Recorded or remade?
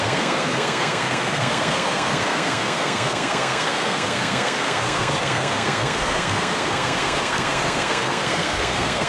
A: remade